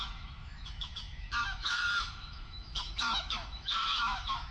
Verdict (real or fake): fake